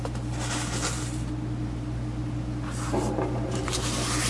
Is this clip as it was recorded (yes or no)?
yes